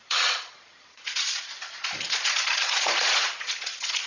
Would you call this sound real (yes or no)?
no